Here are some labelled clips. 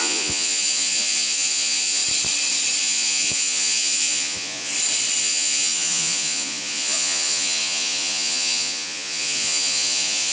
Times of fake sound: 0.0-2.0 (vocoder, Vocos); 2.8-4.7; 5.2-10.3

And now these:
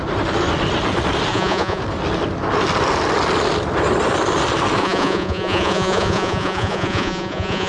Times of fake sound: 1.3-1.8 (vocoder, Vocos); 4.8-7.7

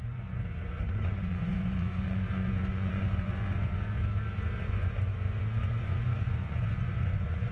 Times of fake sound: 0.0-4.0 (vocoder, Vocos); 4.6-7.5

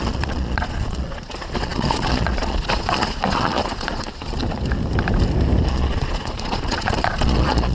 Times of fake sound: 0.0-4.4 (vocoder, Vocos); 5.7-7.7

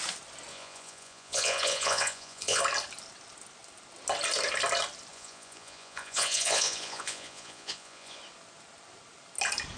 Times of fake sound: 0.5-2.6 (vocoder, Vocos); 5.1-8.2

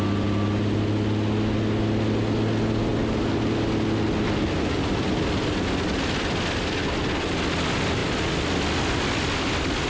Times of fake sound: none

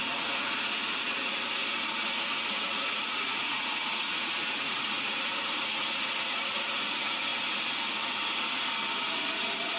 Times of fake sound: 0.0-7.3 (vocoder, Vocos); 9.1-9.8

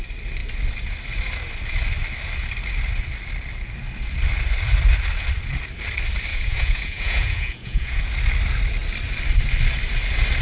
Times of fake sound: 6.3-8.0 (vocoder, Vocos)